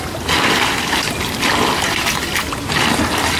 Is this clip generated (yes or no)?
no